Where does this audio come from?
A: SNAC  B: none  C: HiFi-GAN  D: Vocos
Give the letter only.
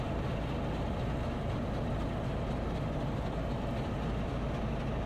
B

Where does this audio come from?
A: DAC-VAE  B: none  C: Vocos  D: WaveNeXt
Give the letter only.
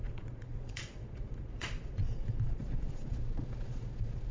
C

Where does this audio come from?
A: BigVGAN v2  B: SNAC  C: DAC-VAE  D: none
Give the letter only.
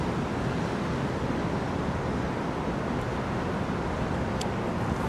D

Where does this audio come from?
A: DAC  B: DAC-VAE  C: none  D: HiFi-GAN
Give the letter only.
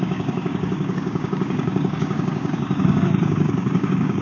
A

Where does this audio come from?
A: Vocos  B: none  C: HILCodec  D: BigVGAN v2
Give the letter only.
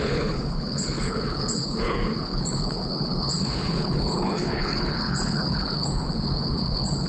C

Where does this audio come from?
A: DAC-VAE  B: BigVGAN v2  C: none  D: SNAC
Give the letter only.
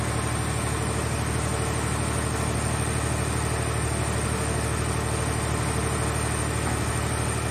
C